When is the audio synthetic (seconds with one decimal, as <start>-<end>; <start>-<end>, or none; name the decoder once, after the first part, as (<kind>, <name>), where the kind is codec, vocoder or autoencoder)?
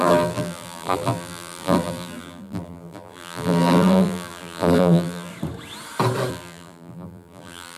0.0-5.3 (vocoder, BigVGAN v2); 6.3-7.8